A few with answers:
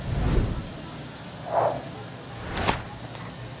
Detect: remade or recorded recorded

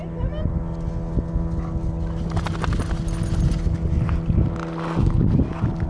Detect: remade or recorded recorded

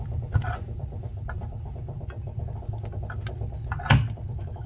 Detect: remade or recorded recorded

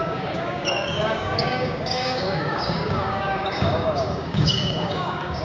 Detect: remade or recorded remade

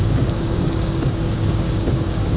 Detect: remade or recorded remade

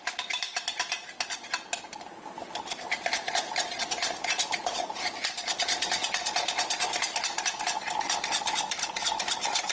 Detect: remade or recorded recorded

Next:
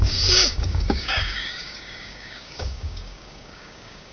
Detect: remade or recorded remade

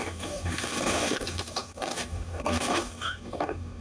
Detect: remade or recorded remade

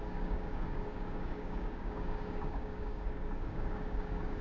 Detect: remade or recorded remade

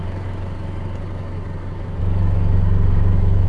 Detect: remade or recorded remade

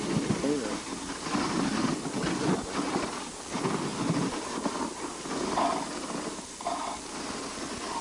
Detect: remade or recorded recorded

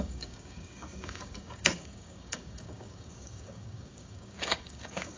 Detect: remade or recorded remade